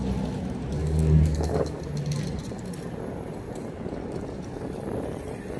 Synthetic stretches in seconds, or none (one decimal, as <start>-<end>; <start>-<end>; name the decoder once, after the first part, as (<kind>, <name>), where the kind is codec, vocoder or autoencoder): 0.8-1.8 (codec, DAC)